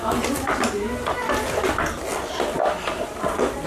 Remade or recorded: recorded